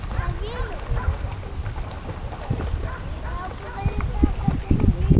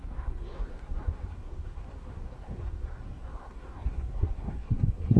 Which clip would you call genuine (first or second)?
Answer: first